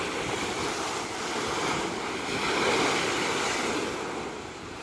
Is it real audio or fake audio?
real